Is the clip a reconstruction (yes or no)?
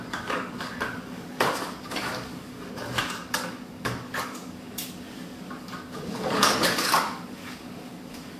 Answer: yes